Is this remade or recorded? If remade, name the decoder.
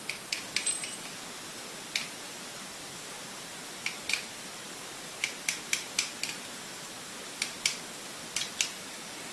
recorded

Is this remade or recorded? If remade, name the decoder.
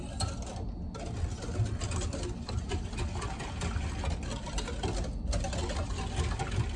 recorded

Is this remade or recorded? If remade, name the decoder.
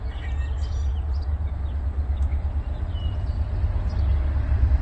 recorded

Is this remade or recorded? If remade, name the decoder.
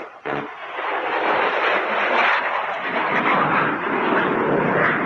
recorded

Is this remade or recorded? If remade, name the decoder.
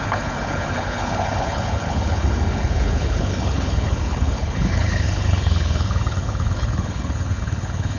remade, codec, HILCodec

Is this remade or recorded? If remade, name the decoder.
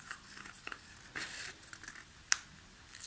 recorded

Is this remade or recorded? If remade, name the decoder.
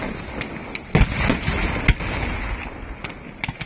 recorded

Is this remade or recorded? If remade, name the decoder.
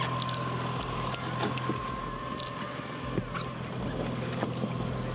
recorded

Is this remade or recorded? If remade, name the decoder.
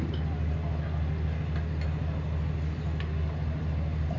recorded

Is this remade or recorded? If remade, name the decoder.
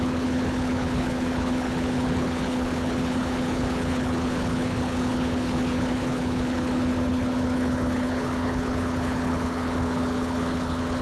remade, codec, HILCodec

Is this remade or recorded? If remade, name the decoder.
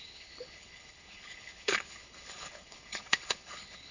remade, codec, HILCodec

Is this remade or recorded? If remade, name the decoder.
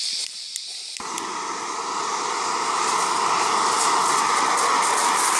recorded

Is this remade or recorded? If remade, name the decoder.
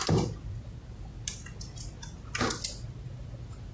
recorded